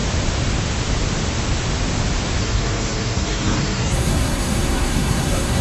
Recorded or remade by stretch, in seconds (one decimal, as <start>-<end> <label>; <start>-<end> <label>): 0.0-2.4 recorded; 2.4-5.6 remade